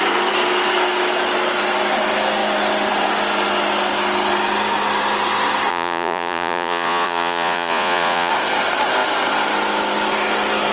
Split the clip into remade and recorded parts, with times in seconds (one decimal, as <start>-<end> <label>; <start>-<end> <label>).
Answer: 0.0-5.7 recorded; 5.7-8.3 remade; 8.3-10.7 recorded